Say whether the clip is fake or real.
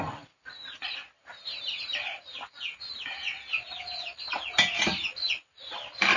fake